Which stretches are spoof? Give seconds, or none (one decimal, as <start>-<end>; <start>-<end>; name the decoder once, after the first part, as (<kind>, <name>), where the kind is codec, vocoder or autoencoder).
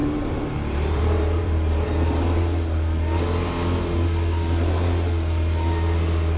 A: 0.0-2.4 (vocoder, BigVGAN v2)